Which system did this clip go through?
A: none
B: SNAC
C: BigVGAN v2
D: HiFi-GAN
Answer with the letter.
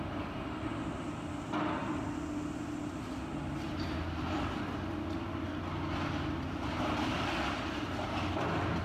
A